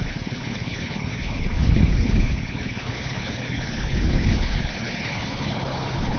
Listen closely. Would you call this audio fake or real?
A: fake